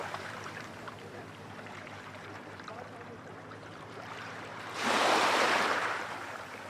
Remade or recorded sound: remade